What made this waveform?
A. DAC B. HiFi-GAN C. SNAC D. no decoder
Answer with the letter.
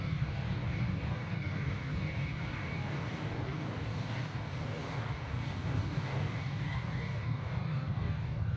A